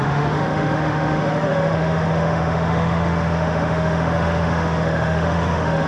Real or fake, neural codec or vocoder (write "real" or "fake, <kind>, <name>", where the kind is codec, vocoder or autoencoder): fake, autoencoder, DAC-VAE